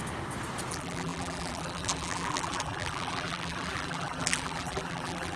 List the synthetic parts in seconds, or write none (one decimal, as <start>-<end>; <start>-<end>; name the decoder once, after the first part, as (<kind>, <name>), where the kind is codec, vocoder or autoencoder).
0.7-5.4 (vocoder, BigVGAN v2)